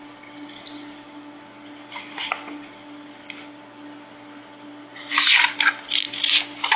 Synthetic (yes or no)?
no